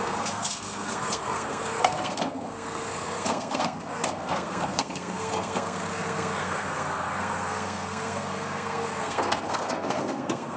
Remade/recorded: remade